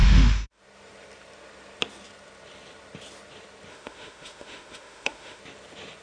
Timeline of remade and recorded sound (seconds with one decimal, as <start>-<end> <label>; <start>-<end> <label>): 0.0-0.6 remade; 0.6-3.7 recorded; 3.7-5.4 remade; 5.4-6.0 recorded